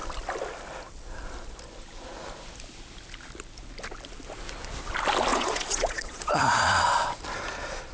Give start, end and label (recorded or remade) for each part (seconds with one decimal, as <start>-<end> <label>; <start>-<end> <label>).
0.0-5.3 recorded; 5.3-6.4 remade; 6.4-7.9 recorded